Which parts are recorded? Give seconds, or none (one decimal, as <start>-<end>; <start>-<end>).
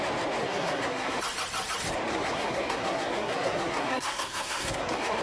0.0-0.4; 1.2-2.1